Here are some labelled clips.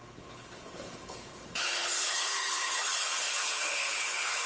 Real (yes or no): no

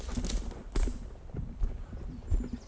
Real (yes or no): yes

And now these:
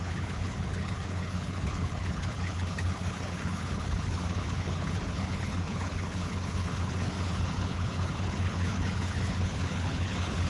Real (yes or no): no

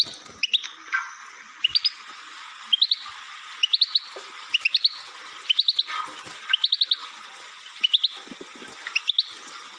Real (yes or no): yes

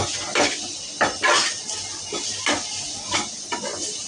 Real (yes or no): yes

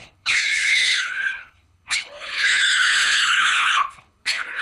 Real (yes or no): no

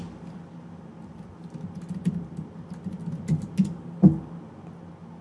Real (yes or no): yes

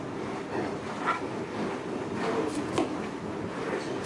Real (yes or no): yes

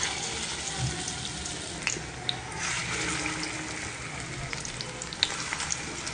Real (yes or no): yes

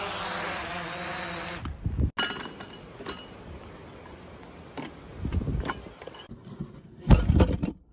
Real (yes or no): yes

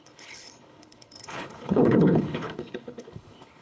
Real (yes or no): no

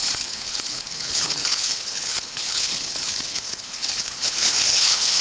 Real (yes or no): no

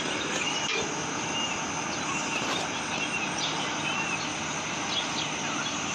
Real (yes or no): yes